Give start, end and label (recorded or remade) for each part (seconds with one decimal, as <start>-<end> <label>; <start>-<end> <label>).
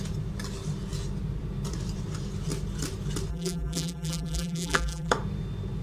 0.0-3.3 recorded; 3.3-5.1 remade; 5.1-5.8 recorded